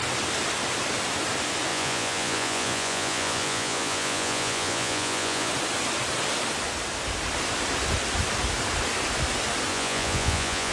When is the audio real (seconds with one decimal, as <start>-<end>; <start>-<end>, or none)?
0.0-1.7; 5.5-9.7